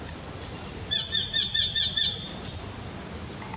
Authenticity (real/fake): real